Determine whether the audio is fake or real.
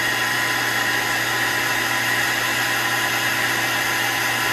real